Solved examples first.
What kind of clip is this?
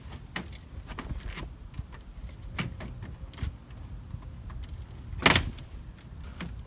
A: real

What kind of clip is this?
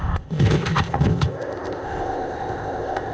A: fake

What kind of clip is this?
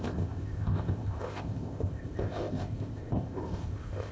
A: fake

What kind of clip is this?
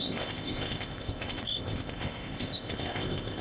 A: fake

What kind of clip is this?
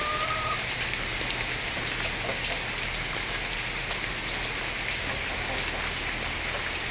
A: real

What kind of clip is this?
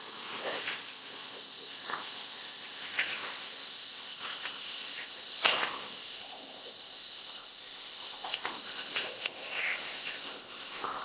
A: fake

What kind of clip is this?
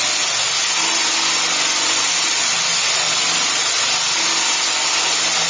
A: real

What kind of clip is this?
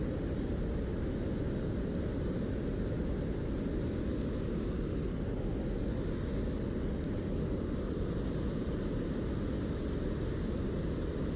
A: real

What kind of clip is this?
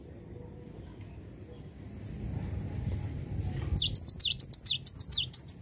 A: real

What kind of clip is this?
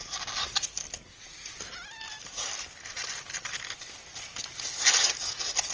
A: real